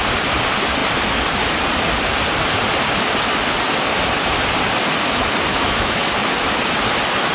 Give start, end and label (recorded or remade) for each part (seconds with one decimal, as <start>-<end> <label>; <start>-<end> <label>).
0.0-5.5 recorded; 5.5-6.1 remade; 6.1-7.3 recorded